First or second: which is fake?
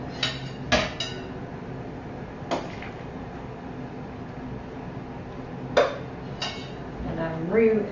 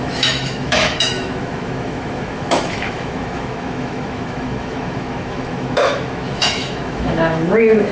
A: second